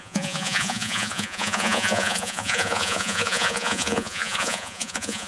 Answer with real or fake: fake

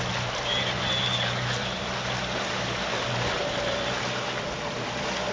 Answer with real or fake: real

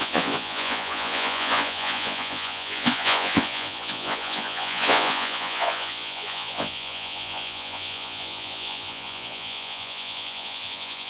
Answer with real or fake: fake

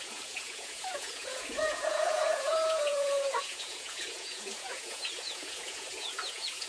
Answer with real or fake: fake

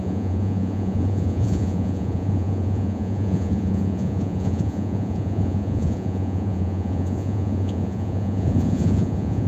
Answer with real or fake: fake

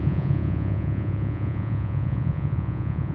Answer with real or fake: fake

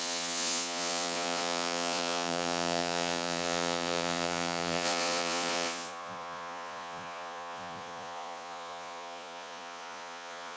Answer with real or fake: fake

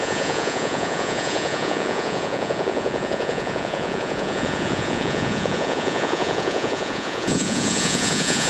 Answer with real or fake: fake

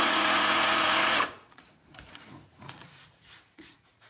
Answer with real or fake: fake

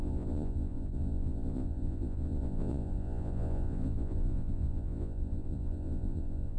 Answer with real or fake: fake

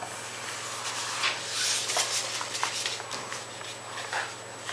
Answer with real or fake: real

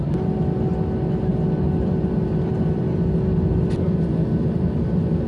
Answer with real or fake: real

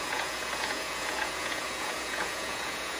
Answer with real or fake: fake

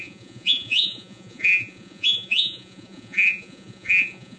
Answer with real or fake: fake